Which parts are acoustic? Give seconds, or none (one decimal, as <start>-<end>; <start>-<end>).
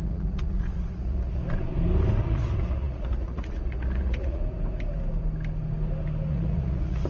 1.4-2.2; 4.4-6.3